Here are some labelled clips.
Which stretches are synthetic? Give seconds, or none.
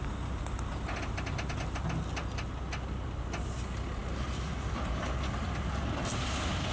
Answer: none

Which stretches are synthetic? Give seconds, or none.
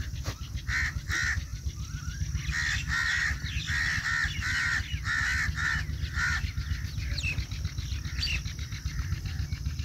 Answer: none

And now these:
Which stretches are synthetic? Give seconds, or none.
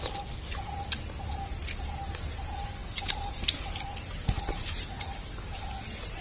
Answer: none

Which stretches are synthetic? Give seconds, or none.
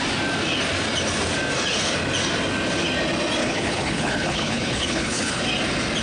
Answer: 3.4-5.4 (codec, HILCodec)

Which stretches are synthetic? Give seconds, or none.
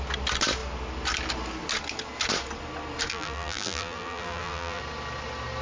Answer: 3.1-4.8 (vocoder, BigVGAN v2)